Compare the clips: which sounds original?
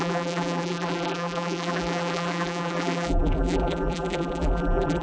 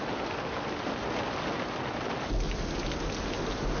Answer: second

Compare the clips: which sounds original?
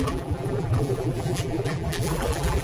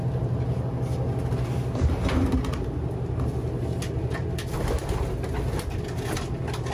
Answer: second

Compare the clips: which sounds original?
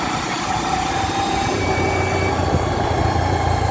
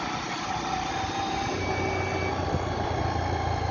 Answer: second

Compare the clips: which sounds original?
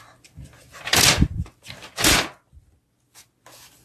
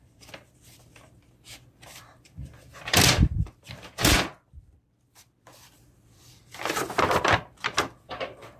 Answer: first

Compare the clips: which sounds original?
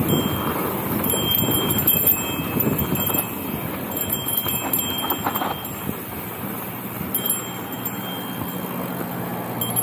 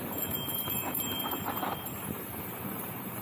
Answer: first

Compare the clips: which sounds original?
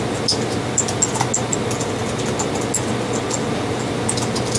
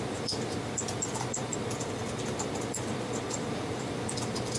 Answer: first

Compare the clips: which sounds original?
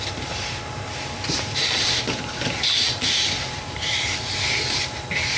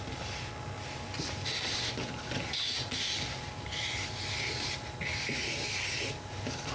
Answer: second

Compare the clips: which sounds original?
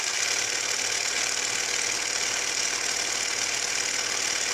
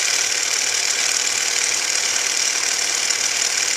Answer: first